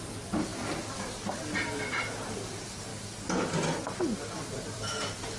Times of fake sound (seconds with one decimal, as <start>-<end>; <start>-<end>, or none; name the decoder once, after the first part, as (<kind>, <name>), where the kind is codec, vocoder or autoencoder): 0.0-2.9 (vocoder, BigVGAN v2); 4.6-5.4